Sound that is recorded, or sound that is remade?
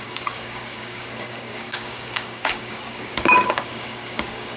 remade